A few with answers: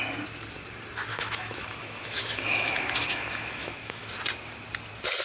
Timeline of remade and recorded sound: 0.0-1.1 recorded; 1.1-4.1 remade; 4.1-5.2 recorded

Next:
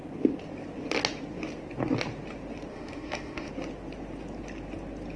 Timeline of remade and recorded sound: 0.0-2.7 recorded; 2.7-3.5 remade; 3.5-5.2 recorded

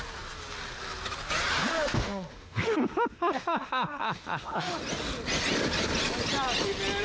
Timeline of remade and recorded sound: 0.0-1.6 recorded; 1.6-4.8 remade; 4.8-7.0 recorded

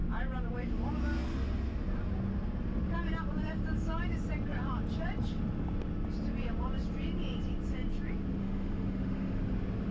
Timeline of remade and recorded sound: 0.0-8.4 recorded; 8.4-9.4 remade; 9.4-9.9 recorded

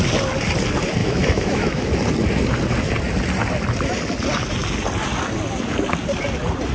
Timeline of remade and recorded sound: 0.0-1.0 recorded; 1.0-1.9 remade; 1.9-6.7 recorded